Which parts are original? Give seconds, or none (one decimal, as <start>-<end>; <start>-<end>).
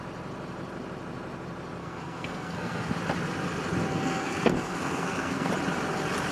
0.0-1.8; 2.9-3.9; 5.5-6.3